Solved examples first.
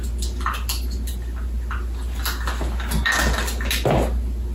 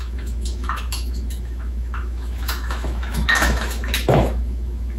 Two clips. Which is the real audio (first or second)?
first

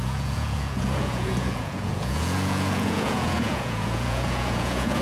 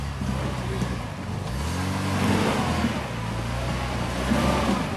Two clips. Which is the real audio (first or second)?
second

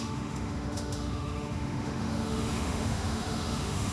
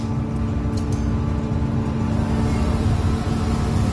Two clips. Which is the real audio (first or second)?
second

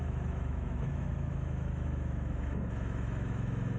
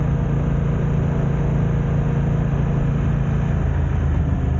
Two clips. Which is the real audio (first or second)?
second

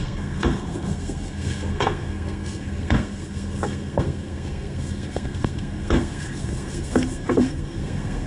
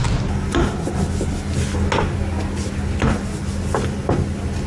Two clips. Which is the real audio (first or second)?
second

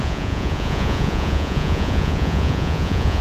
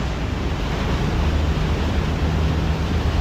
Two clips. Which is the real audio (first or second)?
second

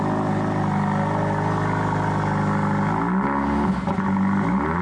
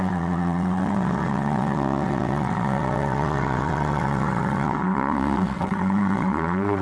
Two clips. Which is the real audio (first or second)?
first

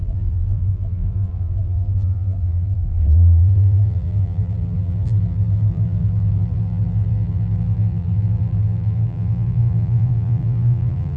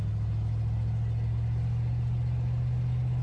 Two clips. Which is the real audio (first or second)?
second